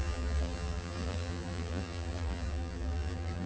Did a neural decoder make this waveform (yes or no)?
yes